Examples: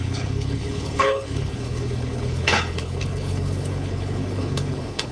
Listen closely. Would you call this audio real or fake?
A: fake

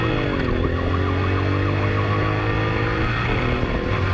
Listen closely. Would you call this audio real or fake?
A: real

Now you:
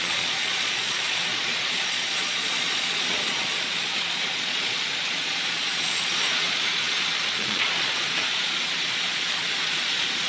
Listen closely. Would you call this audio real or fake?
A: fake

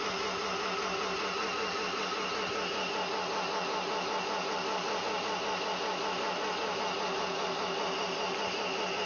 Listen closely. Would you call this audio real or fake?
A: real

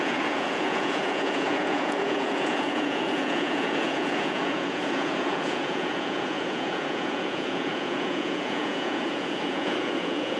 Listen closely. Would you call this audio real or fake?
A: fake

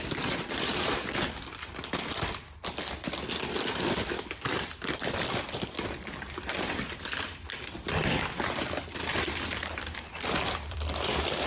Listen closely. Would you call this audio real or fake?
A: fake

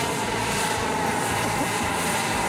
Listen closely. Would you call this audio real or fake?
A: fake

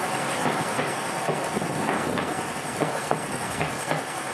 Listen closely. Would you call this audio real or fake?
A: fake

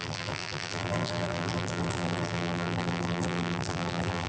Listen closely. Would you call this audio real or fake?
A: fake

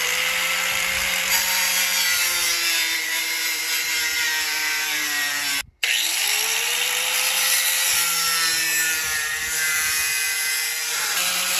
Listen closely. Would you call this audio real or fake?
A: fake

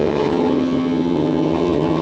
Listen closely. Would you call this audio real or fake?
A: fake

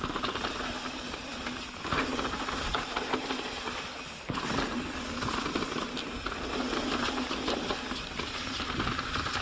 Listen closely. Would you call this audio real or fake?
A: real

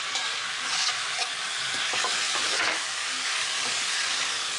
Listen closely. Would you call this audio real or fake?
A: fake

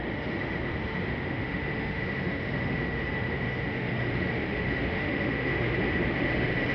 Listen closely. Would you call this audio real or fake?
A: fake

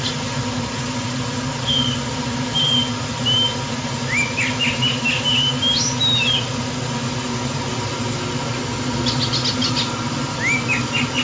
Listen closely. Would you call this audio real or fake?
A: real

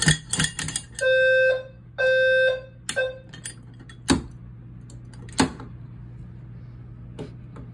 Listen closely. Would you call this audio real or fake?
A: real